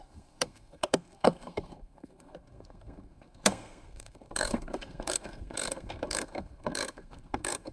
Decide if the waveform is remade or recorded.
remade